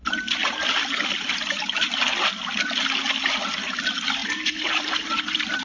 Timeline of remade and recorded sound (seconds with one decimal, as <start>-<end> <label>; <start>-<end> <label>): 0.0-4.2 recorded; 4.2-5.6 remade